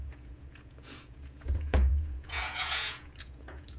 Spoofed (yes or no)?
yes